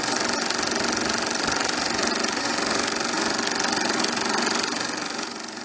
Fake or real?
real